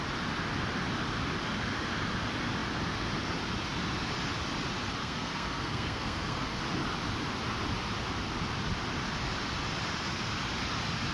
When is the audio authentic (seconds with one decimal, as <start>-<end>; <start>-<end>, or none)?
0.0-5.0; 6.6-11.1